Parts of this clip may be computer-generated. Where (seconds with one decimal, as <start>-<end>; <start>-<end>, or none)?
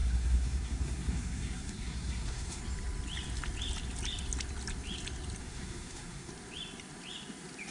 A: 0.0-2.6; 5.4-6.3